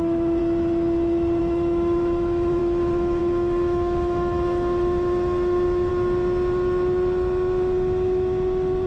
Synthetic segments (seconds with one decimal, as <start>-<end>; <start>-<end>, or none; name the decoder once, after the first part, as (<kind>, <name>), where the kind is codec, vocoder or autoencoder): 0.0-0.4 (autoencoder, DAC-VAE); 1.4-5.9